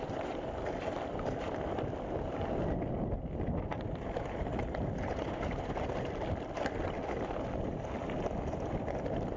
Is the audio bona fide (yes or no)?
yes